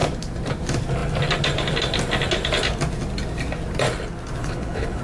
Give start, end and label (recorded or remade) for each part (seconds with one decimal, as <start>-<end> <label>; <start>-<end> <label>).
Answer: 0.0-4.4 recorded; 4.4-5.0 remade